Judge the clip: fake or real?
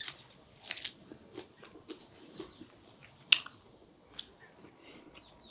real